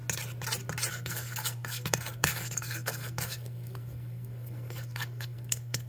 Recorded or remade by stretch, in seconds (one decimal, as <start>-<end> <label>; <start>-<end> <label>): 0.0-0.9 recorded; 0.9-5.9 remade